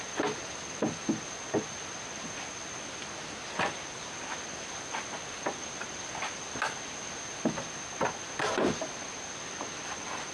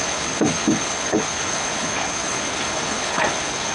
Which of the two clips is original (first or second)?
first